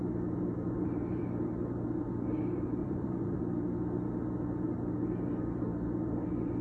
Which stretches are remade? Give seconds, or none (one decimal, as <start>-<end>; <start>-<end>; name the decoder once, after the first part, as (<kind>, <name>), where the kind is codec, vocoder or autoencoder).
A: 2.8-3.4 (vocoder, Vocos)